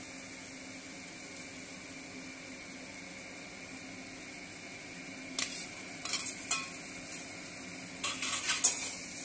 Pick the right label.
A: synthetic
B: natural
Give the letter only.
B